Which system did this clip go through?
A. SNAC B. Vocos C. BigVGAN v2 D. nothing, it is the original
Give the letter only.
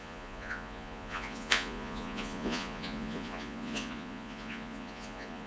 B